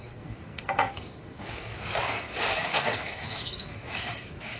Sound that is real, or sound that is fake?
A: fake